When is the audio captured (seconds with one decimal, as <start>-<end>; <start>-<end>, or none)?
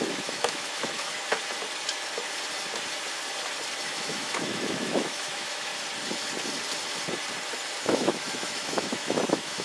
1.1-3.9; 5.7-7.8